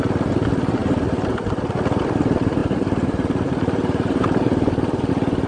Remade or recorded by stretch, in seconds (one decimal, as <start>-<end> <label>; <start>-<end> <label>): 0.0-2.6 recorded; 2.6-5.1 remade; 5.1-5.5 recorded